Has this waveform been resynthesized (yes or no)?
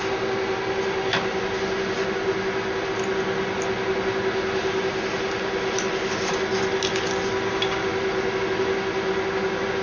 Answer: no